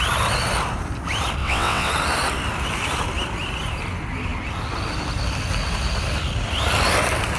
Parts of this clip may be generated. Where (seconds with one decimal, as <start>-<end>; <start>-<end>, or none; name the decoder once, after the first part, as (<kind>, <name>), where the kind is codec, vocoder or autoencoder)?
1.4-1.9 (vocoder, WaveNeXt)